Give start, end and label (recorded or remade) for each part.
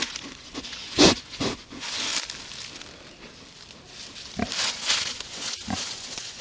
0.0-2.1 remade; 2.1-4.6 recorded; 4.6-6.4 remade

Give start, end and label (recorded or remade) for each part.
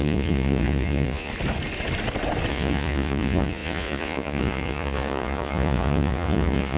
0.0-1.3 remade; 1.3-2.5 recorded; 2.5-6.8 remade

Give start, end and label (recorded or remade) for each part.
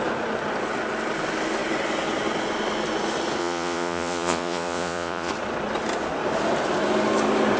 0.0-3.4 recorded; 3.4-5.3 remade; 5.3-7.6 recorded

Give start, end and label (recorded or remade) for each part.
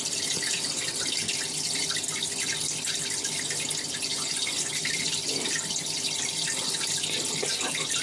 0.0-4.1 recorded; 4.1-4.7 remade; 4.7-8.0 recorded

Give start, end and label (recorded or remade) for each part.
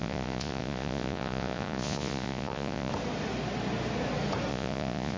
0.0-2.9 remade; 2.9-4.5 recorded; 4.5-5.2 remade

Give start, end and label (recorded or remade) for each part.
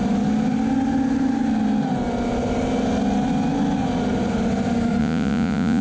0.0-5.0 recorded; 5.0-5.8 remade